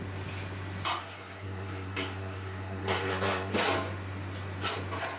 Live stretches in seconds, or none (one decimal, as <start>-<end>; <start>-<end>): 0.0-1.0; 3.5-5.2